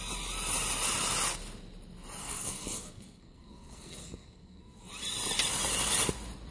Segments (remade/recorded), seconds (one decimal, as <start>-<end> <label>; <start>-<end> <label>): 0.0-2.2 recorded; 2.2-4.9 remade; 4.9-6.5 recorded